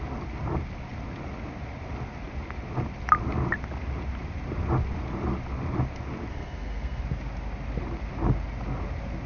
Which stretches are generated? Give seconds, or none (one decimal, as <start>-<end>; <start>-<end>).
6.3-7.0